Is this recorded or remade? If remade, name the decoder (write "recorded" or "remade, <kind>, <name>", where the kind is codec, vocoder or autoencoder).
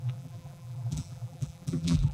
remade, vocoder, BigVGAN v2